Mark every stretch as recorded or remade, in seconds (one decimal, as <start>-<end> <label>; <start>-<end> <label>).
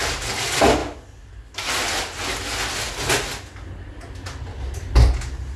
0.0-5.6 recorded